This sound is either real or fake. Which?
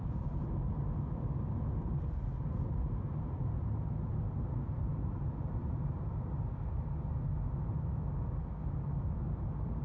real